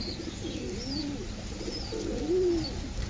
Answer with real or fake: real